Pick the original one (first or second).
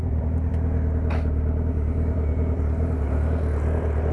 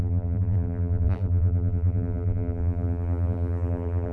first